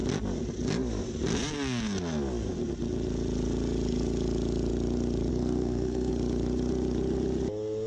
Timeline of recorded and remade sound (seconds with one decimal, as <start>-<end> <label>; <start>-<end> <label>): 0.0-5.3 recorded; 5.3-6.1 remade; 6.1-7.9 recorded